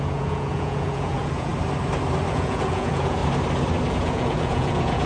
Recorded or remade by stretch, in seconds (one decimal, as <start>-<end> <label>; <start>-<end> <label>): 0.0-1.5 remade; 1.5-2.3 recorded; 2.3-3.2 remade; 3.2-3.9 recorded; 3.9-5.1 remade